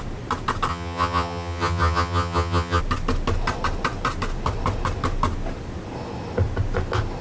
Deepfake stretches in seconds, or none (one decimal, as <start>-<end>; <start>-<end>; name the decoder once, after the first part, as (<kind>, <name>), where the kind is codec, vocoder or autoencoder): 0.7-2.8 (vocoder, HiFi-GAN)

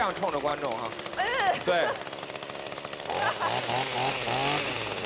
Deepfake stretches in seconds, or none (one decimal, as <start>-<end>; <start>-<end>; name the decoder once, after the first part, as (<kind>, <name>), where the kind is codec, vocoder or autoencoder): none

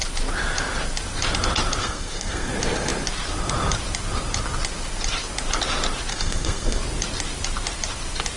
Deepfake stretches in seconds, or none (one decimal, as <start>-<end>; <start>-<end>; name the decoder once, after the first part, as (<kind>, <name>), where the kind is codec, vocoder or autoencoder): 1.8-2.5 (codec, SNAC); 6.1-6.8

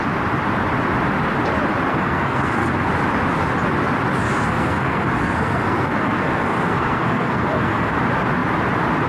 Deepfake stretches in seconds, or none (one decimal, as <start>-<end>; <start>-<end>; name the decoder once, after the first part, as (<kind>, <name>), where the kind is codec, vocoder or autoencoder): 1.9-2.9 (codec, SNAC); 4.2-7.9